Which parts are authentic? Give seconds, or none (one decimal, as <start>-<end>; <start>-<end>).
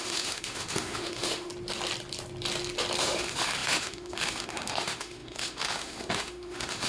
1.5-3.0